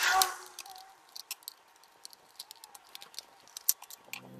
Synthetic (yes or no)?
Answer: no